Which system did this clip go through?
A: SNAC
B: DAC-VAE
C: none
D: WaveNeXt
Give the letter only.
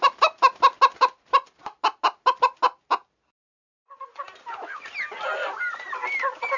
C